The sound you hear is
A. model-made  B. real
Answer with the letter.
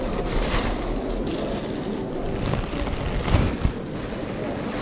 B